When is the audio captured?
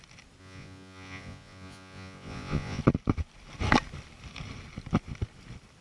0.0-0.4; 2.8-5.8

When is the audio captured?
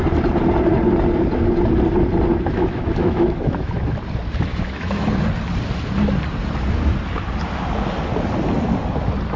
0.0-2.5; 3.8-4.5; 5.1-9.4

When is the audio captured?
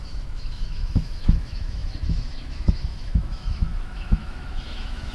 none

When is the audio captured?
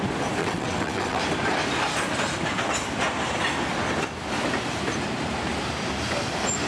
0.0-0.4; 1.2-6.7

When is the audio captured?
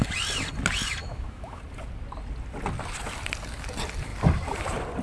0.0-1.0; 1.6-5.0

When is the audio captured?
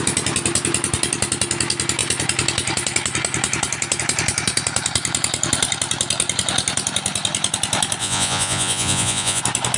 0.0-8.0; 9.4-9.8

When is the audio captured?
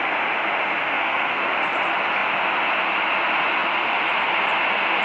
0.0-0.8; 1.5-5.0